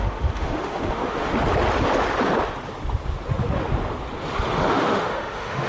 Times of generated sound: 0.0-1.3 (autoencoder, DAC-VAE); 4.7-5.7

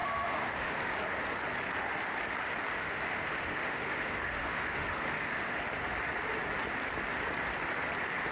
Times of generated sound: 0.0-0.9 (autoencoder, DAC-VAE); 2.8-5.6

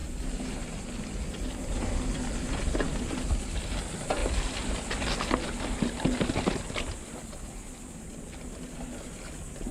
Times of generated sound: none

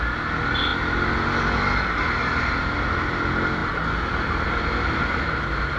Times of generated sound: none

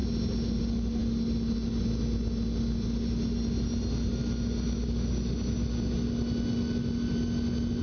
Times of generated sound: none